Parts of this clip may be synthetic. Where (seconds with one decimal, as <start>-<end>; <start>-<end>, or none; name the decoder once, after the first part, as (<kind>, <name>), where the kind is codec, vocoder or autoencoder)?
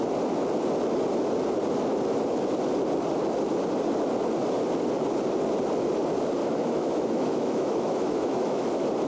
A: 6.4-8.7 (autoencoder, DAC-VAE)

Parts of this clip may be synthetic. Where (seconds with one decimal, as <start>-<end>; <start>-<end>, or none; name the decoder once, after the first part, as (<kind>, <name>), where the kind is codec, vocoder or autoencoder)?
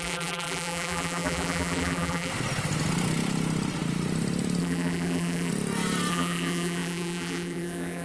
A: 0.0-2.3 (vocoder, BigVGAN v2); 4.6-5.5; 6.1-8.0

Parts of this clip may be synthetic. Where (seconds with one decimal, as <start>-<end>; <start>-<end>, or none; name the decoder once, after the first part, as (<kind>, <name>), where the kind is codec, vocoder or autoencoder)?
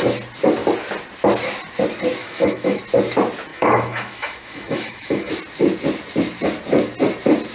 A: 2.2-2.8 (autoencoder, DAC-VAE); 3.5-5.3